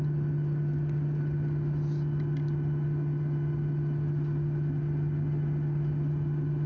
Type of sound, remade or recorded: recorded